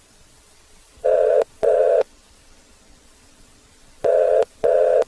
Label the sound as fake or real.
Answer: fake